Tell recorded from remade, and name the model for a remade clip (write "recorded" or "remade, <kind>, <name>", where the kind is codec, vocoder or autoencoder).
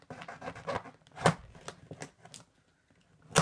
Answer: recorded